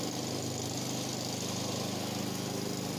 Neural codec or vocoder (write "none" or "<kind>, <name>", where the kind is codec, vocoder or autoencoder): none